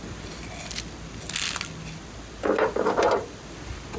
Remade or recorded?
recorded